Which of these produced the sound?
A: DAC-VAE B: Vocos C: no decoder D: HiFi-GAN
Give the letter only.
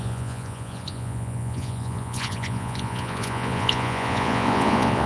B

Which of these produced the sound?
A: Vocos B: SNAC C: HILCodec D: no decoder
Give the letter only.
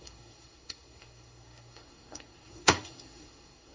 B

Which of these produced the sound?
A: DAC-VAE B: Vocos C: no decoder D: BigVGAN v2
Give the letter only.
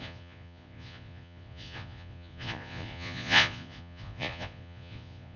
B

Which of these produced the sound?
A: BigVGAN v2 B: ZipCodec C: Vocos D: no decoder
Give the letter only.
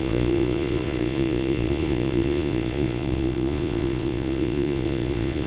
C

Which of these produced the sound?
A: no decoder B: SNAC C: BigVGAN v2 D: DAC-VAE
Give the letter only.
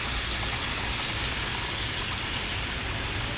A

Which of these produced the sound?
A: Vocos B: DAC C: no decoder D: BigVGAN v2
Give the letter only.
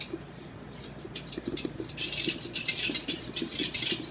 D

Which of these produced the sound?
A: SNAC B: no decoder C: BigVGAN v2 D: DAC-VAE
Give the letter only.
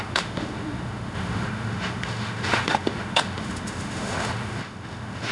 D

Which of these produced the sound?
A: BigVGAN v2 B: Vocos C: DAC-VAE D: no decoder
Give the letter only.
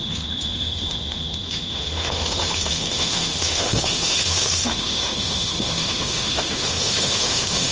C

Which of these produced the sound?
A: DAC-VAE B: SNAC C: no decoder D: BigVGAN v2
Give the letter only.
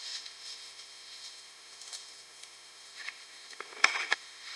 A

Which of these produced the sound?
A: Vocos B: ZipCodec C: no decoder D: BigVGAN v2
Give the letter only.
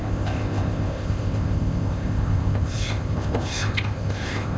B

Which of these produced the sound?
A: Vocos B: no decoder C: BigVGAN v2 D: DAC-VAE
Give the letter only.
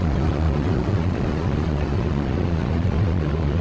A